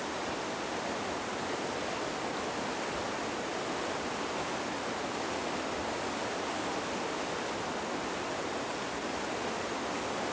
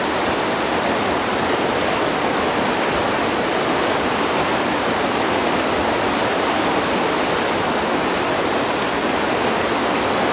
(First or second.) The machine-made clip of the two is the second